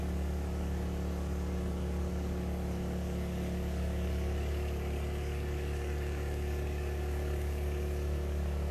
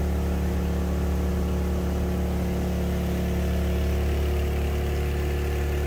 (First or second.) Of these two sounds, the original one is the second